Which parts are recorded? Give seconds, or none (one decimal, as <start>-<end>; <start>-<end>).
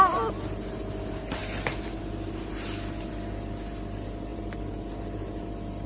0.0-5.9